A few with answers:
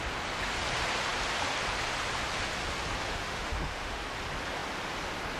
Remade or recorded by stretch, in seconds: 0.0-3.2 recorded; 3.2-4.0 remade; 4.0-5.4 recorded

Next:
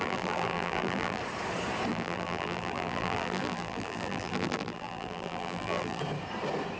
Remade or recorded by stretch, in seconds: 0.0-1.2 remade; 1.2-1.9 recorded; 1.9-6.0 remade; 6.0-6.8 recorded

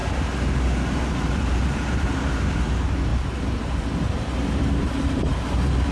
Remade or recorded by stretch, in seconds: 0.0-1.0 recorded; 1.0-3.1 remade; 3.1-4.6 recorded; 4.6-5.9 remade